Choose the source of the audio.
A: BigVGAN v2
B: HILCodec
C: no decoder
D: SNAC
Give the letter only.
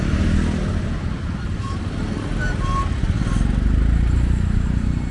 C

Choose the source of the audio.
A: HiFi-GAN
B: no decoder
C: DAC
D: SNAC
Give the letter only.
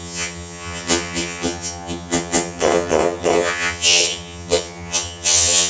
A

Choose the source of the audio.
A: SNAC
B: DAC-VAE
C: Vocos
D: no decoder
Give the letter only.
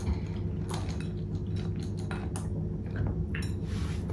D